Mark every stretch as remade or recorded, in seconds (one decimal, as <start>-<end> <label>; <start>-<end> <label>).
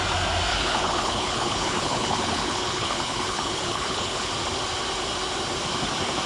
0.0-0.5 recorded; 0.5-4.3 remade; 4.3-6.3 recorded